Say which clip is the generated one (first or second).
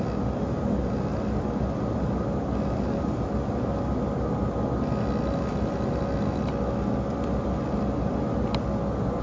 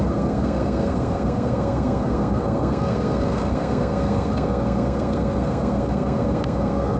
second